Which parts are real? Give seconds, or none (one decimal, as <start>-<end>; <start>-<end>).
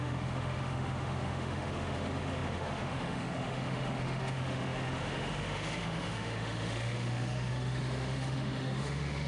none